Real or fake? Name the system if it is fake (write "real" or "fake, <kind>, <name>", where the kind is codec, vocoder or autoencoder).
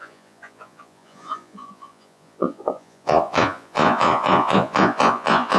fake, vocoder, Vocos